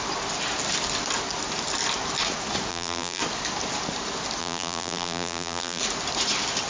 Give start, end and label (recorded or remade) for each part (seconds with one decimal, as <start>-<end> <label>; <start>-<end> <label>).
0.0-2.7 recorded; 2.7-3.2 remade; 3.2-4.4 recorded; 4.4-5.8 remade; 5.8-6.7 recorded